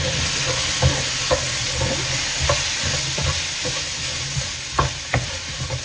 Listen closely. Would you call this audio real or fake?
real